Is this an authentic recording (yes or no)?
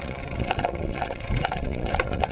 no